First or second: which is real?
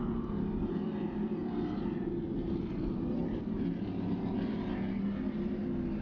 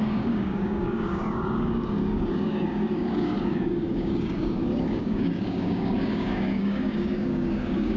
first